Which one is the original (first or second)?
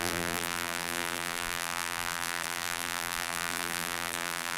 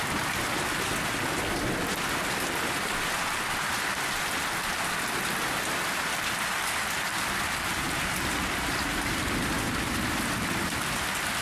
second